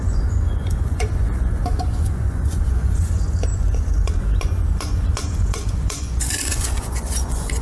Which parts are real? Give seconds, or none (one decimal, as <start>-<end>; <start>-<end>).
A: none